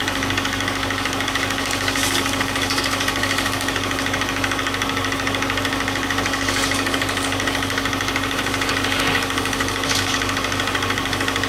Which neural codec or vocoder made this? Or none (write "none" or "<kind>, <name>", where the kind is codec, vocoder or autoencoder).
codec, DAC